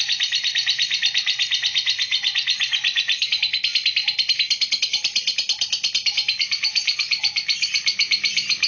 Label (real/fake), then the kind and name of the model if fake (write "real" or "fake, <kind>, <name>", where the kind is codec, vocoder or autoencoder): real